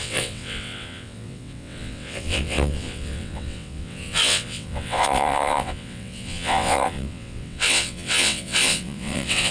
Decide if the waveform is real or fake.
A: fake